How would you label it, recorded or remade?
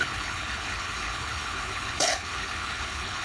remade